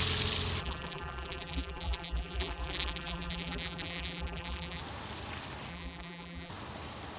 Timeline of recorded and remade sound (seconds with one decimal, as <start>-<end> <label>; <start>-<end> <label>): 0.0-0.6 recorded; 0.6-4.8 remade; 4.8-5.7 recorded; 5.7-6.5 remade; 6.5-7.2 recorded